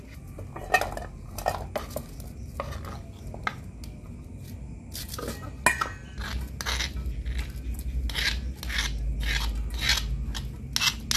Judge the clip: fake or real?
real